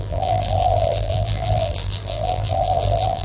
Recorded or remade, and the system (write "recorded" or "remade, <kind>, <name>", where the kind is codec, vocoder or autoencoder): remade, vocoder, BigVGAN v2